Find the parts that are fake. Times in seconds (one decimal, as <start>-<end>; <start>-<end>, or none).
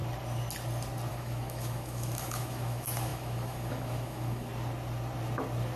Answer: 1.1-4.5